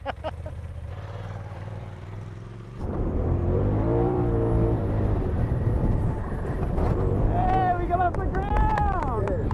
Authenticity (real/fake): fake